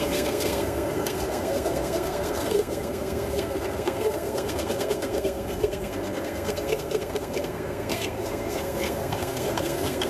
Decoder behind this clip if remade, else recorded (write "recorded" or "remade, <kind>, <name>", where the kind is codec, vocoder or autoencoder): remade, codec, SNAC